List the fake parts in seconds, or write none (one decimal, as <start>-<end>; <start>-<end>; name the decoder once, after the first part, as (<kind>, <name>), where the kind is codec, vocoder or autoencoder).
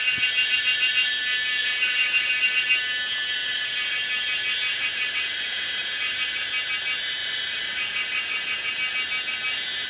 1.6-2.3 (vocoder, Vocos); 3.4-3.9; 4.7-6.2; 7.2-8.7